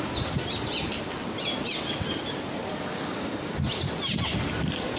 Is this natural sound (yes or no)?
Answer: yes